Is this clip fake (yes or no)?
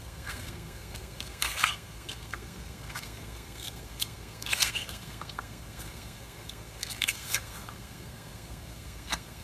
yes